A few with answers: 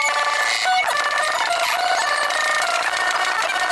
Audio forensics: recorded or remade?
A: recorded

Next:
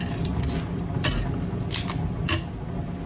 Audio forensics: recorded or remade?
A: recorded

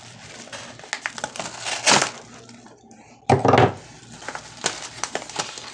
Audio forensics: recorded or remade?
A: recorded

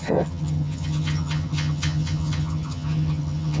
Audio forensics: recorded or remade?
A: remade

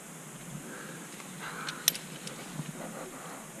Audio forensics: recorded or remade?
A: recorded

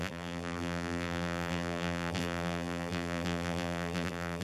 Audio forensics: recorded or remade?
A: remade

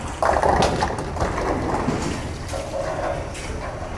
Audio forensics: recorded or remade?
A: recorded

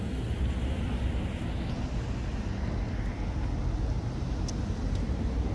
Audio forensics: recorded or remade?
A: recorded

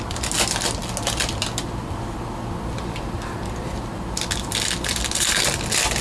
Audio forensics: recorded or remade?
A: recorded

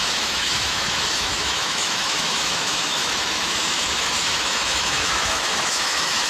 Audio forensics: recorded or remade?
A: remade